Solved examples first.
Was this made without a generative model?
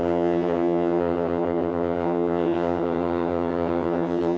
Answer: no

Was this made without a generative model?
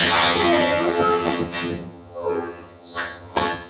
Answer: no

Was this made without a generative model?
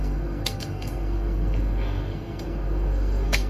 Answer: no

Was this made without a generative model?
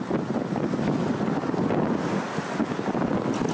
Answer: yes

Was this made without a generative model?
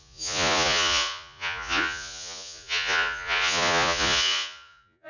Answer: no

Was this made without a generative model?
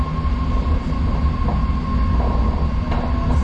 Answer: yes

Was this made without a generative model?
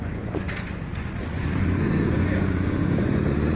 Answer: no